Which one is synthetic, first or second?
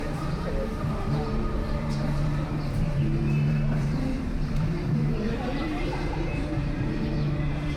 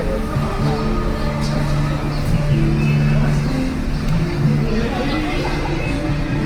first